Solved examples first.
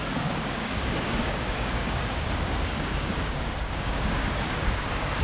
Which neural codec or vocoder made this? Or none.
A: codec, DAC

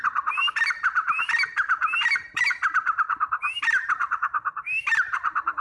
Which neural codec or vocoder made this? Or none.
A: vocoder, BigVGAN v2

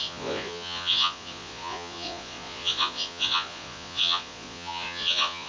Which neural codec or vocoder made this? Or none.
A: vocoder, Vocos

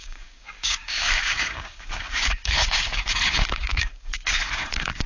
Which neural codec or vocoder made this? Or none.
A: codec, DAC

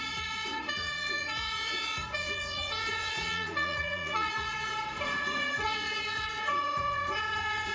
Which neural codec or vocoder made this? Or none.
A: vocoder, Vocos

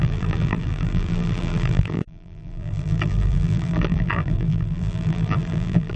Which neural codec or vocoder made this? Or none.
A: vocoder, BigVGAN v2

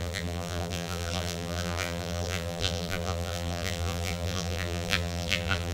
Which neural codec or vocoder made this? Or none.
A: vocoder, BigVGAN v2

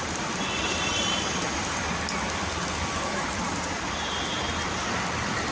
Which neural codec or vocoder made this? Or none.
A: none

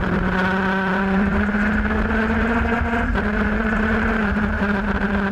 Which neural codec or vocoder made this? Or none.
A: vocoder, BigVGAN v2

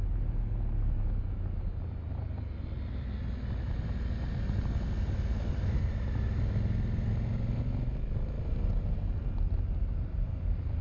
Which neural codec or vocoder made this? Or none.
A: none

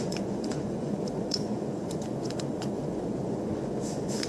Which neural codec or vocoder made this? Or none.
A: vocoder, Vocos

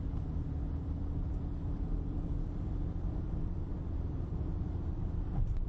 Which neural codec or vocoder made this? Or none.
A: vocoder, BigVGAN v2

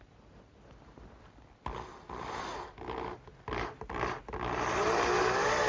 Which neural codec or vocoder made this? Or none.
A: none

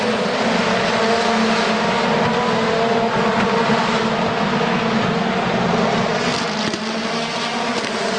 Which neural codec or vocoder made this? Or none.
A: none